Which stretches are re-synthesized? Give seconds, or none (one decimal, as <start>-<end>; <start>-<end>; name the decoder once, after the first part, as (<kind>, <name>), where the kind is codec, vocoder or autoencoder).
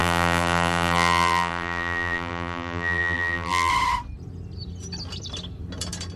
0.0-3.7 (vocoder, BigVGAN v2)